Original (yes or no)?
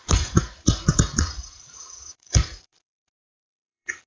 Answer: no